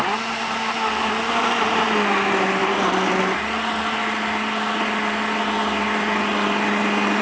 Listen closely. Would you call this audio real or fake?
real